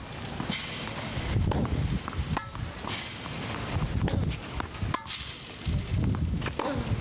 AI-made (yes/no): no